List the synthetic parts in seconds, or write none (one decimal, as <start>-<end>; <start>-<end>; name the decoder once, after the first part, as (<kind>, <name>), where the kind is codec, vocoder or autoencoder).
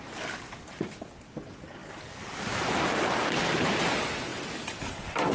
none